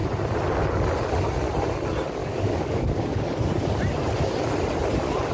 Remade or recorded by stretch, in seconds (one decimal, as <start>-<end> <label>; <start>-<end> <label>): 0.0-2.2 recorded; 2.2-3.2 remade; 3.2-5.3 recorded